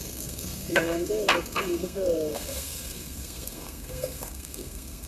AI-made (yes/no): yes